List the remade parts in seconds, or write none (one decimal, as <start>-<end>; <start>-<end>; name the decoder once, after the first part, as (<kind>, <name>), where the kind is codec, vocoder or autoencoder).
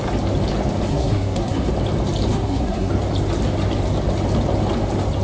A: 0.9-1.7 (codec, SNAC); 2.3-2.9